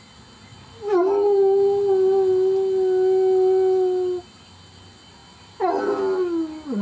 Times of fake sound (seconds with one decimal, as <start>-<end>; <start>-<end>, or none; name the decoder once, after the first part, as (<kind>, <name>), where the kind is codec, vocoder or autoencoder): none